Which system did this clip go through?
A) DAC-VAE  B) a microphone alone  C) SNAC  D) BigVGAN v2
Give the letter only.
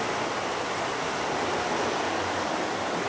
B